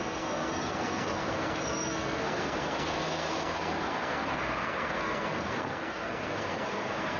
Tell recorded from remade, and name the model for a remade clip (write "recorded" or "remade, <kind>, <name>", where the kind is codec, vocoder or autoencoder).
remade, codec, SNAC